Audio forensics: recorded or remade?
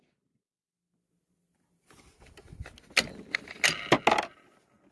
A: recorded